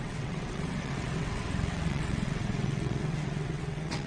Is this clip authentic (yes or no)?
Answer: no